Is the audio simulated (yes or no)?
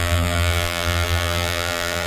yes